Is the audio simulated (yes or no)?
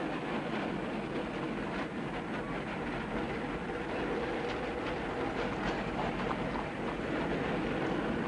no